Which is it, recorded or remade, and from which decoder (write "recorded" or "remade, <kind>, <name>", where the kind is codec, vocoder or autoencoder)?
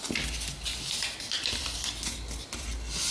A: recorded